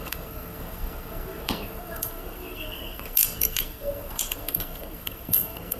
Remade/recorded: remade